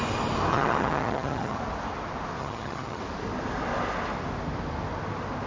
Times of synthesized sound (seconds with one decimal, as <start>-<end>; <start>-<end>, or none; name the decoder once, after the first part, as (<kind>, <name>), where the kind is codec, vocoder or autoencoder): 0.5-1.6 (vocoder, HiFi-GAN); 2.4-3.0